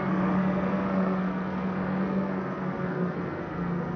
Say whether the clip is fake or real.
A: fake